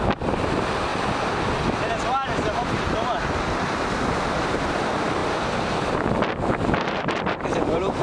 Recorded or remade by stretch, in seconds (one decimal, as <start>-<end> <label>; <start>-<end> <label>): 0.0-0.9 remade; 0.9-3.9 recorded; 3.9-8.0 remade